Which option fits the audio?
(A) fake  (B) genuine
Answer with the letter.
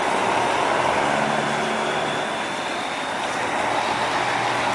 B